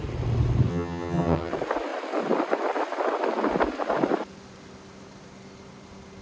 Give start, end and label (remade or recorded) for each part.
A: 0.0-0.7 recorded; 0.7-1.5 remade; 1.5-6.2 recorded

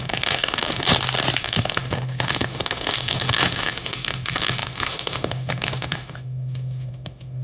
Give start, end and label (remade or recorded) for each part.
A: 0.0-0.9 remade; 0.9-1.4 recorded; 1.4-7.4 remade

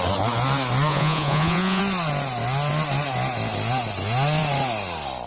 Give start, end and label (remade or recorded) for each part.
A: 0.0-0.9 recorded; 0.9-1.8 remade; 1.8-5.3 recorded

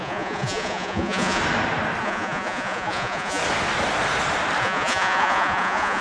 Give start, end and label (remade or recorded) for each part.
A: 0.0-1.4 remade; 1.4-2.0 recorded; 2.0-3.4 remade; 3.4-4.6 recorded; 4.6-6.0 remade

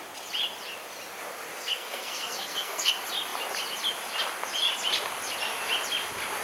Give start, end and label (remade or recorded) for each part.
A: 0.0-1.5 recorded; 1.5-2.9 remade; 2.9-6.4 recorded

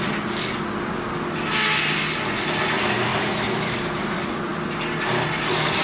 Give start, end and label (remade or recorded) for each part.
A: 0.0-5.8 recorded